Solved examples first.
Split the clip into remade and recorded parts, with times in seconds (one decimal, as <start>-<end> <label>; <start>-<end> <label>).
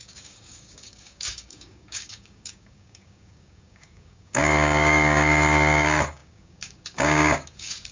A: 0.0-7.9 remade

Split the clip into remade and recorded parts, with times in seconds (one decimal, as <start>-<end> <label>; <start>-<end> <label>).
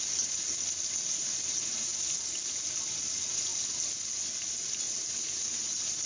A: 0.0-6.1 recorded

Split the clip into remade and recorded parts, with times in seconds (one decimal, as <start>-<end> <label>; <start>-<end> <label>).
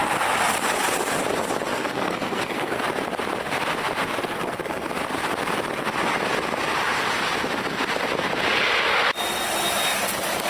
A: 0.0-1.7 recorded; 1.7-2.8 remade; 2.8-4.2 recorded; 4.2-4.9 remade; 4.9-10.5 recorded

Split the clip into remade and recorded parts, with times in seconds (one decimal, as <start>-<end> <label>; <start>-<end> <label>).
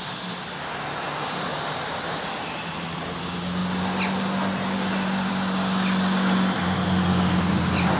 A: 0.0-1.5 recorded; 1.5-3.2 remade; 3.2-8.0 recorded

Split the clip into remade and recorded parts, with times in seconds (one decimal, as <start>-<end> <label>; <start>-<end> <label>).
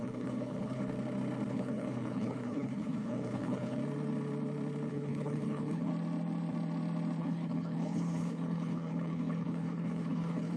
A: 0.0-0.8 remade; 0.8-1.5 recorded; 1.5-3.8 remade; 3.8-4.9 recorded; 4.9-5.9 remade; 5.9-7.2 recorded; 7.2-10.6 remade